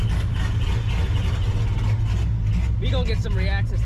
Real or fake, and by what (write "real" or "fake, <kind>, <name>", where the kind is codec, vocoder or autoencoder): real